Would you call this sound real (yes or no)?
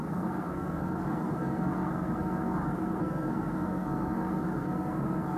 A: no